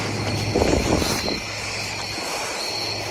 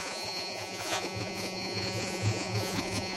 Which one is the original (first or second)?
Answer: first